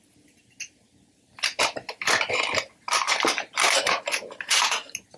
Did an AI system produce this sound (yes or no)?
no